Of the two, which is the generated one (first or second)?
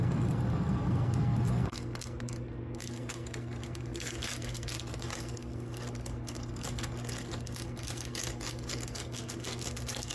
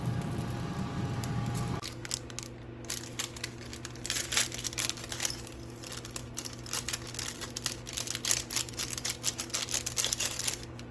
first